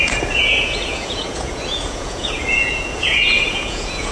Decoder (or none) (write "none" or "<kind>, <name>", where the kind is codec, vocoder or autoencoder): vocoder, Vocos